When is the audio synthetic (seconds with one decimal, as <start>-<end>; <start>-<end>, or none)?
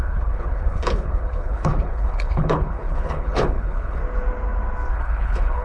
0.0-4.0; 4.9-5.6